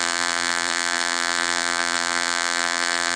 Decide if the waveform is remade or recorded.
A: remade